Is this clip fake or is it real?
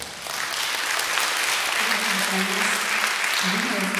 real